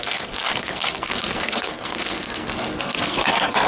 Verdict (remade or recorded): remade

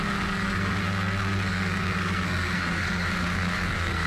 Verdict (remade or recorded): remade